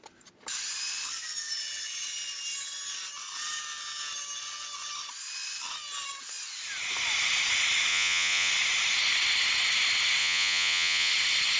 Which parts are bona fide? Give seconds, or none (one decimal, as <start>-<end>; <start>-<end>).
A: 0.0-7.9; 8.5-10.2; 11.1-11.6